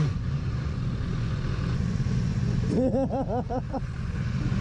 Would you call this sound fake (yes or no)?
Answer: yes